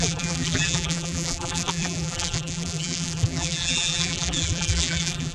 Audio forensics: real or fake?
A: fake